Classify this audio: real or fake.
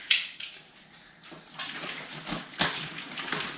real